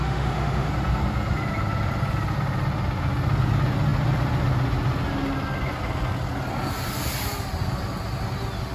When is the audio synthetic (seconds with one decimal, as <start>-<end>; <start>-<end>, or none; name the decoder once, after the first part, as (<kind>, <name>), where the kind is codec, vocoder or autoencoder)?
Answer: 0.0-0.7 (autoencoder, DAC-VAE)